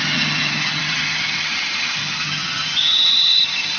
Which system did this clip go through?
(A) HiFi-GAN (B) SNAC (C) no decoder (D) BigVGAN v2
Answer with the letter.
A